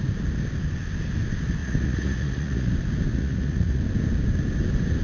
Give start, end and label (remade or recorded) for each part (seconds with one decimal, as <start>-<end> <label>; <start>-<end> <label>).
0.0-1.6 recorded; 1.6-2.7 remade; 2.7-3.1 recorded; 3.1-3.8 remade; 3.8-5.0 recorded